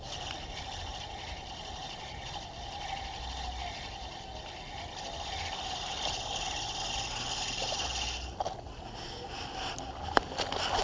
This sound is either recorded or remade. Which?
recorded